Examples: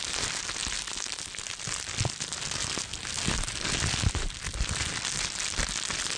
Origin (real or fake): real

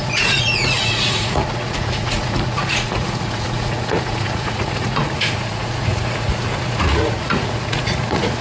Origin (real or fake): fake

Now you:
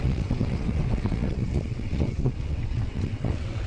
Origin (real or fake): fake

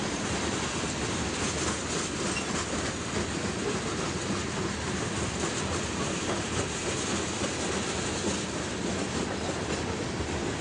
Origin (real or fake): real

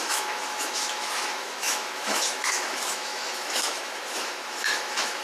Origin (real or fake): fake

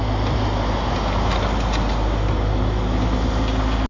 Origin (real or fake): real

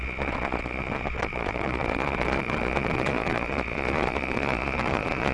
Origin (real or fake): fake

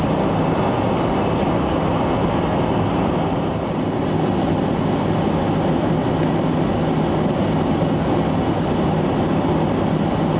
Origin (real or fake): real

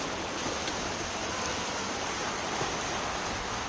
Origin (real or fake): real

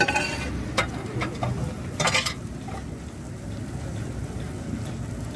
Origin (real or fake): real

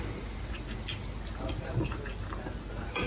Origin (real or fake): real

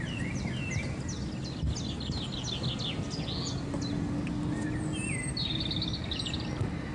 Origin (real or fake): real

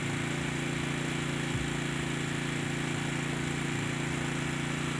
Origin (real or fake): real